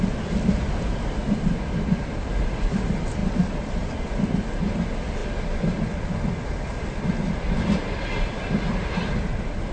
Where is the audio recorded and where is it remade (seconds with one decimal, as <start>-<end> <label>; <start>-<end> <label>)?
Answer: 0.0-9.7 recorded